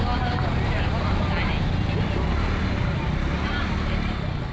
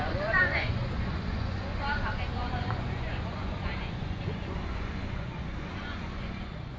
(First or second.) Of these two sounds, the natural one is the first